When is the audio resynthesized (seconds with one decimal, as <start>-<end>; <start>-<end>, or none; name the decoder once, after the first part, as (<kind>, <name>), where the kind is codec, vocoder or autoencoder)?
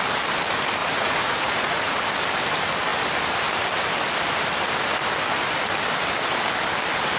0.8-2.0 (vocoder, Vocos)